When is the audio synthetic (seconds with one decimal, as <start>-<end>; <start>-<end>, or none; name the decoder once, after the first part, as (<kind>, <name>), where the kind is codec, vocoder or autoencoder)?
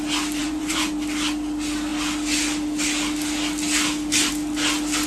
0.4-0.9 (vocoder, Vocos)